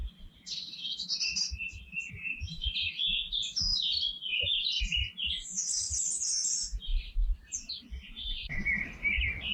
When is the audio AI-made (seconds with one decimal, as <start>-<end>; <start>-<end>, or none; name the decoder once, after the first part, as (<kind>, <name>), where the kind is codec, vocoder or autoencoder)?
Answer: 6.9-7.7 (vocoder, BigVGAN v2)